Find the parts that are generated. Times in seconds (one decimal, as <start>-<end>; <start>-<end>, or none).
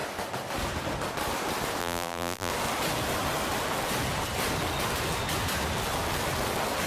1.8-2.5